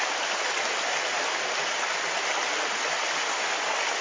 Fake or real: real